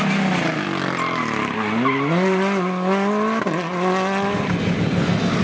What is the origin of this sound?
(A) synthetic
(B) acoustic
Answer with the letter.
B